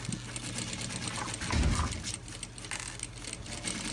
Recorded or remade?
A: recorded